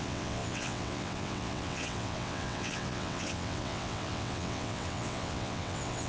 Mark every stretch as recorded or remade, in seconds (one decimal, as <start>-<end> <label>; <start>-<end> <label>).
0.0-6.1 remade